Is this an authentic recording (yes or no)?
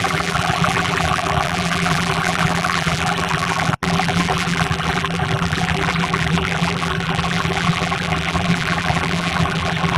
no